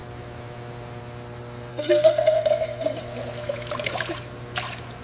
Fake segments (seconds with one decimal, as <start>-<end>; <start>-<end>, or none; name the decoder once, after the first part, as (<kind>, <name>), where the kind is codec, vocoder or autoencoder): 1.7-2.4 (codec, SNAC)